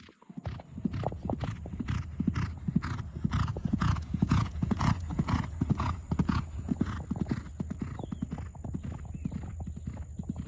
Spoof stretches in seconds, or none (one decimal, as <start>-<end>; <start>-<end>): 3.5-6.9